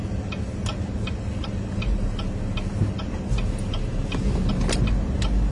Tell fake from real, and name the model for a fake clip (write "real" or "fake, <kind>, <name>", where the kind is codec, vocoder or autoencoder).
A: real